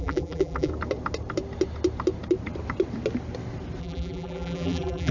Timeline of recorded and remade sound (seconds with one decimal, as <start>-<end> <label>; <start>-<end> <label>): 0.0-0.7 remade; 0.7-3.8 recorded; 3.8-5.1 remade